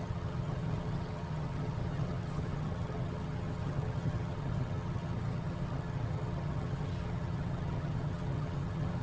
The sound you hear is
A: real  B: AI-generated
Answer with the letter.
B